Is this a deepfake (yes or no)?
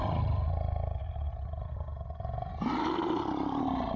no